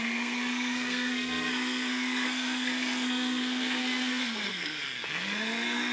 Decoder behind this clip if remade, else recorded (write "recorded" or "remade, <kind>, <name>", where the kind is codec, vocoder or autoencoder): remade, codec, SNAC